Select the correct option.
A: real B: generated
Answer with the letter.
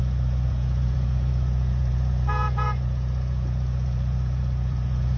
B